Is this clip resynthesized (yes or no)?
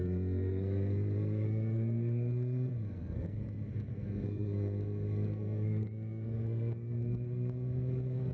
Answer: yes